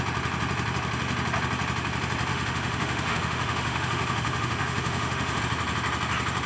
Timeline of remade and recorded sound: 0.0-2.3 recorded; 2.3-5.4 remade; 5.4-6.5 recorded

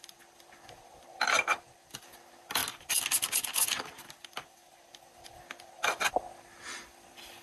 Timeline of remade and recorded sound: 0.0-7.4 recorded

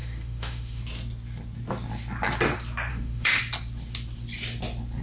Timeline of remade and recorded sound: 0.0-0.8 remade; 0.8-2.9 recorded; 2.9-3.4 remade; 3.4-5.0 recorded

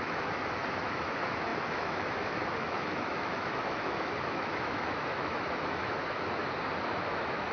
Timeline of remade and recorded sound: 0.0-6.4 remade; 6.4-7.0 recorded; 7.0-7.5 remade

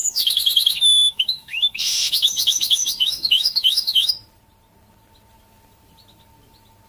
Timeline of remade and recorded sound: 0.0-4.1 remade; 4.1-6.9 recorded

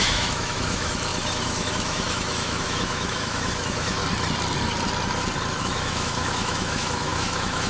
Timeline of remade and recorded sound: 0.0-4.0 remade; 4.0-5.6 recorded; 5.6-7.7 remade

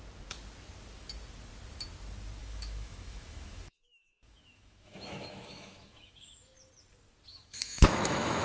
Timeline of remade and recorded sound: 0.0-2.4 recorded; 2.4-6.5 remade; 6.5-7.3 recorded; 7.3-8.4 remade

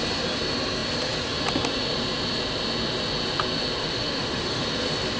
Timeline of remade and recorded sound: 0.0-3.8 recorded; 3.8-4.6 remade; 4.6-5.2 recorded